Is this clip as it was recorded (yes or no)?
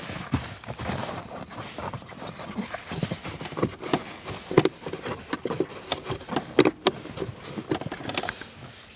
yes